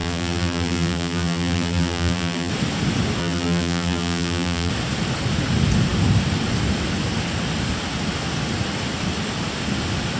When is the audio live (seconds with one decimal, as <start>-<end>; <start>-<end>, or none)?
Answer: 2.5-3.2; 4.7-10.2